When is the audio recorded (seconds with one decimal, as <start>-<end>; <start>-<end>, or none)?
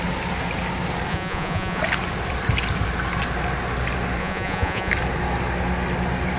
0.0-1.1; 1.8-4.2; 4.9-6.4